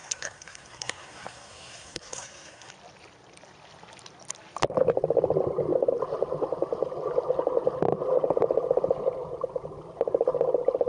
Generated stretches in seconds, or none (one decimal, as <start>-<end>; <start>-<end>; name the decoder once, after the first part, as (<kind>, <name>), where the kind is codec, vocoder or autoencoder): 0.0-2.7 (codec, SNAC)